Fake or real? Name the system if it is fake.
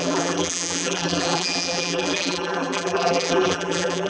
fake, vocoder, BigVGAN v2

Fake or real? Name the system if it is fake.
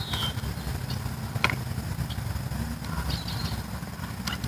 real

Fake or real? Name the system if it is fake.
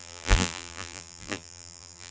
fake, vocoder, BigVGAN v2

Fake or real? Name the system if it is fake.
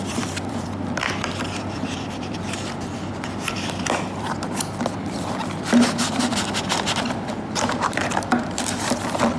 fake, vocoder, BigVGAN v2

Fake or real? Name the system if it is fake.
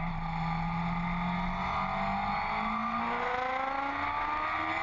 real